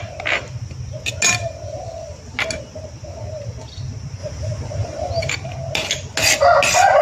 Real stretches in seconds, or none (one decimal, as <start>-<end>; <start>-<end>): 0.0-7.0